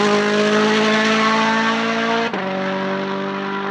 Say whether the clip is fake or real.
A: real